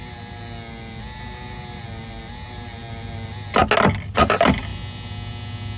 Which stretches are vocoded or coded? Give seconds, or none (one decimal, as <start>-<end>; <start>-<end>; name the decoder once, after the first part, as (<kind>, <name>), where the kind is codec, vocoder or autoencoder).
none